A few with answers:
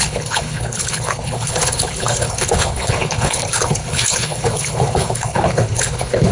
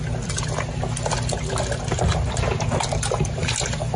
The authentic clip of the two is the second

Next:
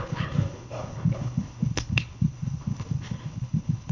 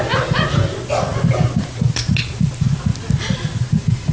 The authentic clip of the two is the second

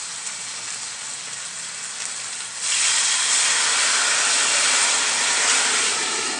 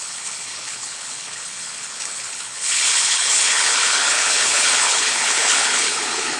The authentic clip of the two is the first